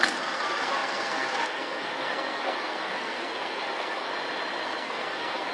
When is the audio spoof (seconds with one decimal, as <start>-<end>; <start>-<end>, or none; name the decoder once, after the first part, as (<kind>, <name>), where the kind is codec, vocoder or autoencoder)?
0.0-4.1 (codec, SNAC); 4.6-5.5